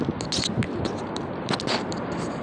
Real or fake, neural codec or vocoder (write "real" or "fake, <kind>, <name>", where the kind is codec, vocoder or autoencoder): real